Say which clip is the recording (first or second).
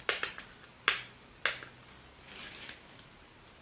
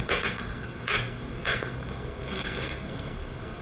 first